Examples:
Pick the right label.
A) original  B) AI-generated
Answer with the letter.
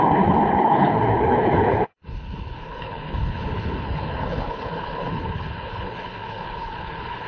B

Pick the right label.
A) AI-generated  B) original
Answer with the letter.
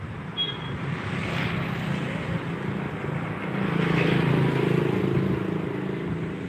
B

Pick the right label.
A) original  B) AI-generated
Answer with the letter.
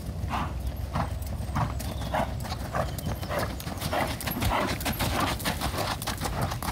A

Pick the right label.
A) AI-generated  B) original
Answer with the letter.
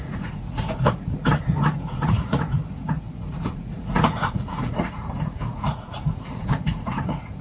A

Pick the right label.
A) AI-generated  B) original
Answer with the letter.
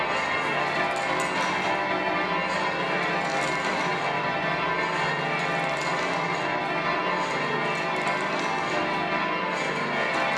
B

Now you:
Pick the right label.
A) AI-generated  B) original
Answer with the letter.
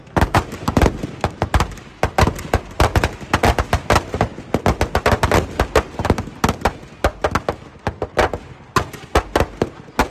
B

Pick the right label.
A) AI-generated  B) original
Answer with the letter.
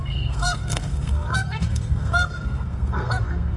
A